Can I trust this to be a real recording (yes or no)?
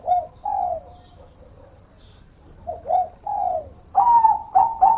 no